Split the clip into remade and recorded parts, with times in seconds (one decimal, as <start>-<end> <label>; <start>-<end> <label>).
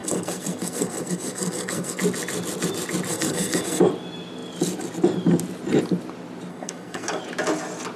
0.0-2.0 remade; 2.0-3.1 recorded; 3.1-3.8 remade; 3.8-6.5 recorded; 6.5-7.2 remade; 7.2-8.0 recorded